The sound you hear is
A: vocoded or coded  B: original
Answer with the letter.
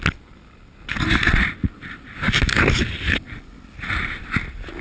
B